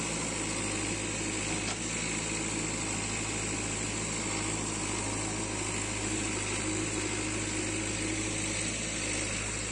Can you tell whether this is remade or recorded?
recorded